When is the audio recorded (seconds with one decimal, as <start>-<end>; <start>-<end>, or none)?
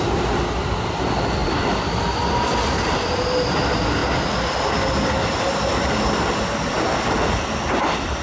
0.0-8.2